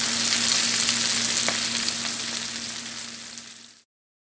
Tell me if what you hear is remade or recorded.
recorded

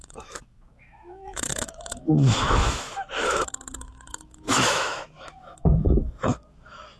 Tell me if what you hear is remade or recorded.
remade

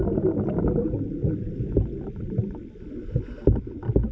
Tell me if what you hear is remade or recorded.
recorded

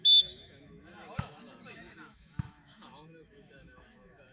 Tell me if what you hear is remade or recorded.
remade